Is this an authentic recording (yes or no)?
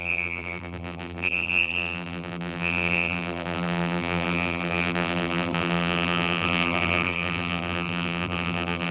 no